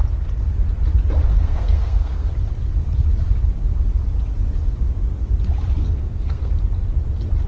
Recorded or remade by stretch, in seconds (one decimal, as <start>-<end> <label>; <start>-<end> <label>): 0.0-1.3 recorded; 1.3-2.3 remade; 2.3-5.8 recorded; 5.8-6.5 remade; 6.5-7.5 recorded